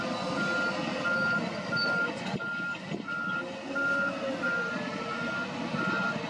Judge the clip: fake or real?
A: real